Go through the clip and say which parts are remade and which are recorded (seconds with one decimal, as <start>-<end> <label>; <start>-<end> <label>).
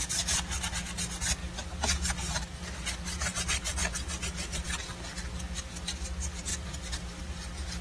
0.0-7.8 recorded